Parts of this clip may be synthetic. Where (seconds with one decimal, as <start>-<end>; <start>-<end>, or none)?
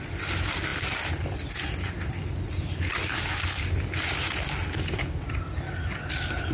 none